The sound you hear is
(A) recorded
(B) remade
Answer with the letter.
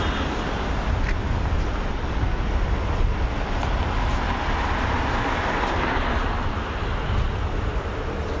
A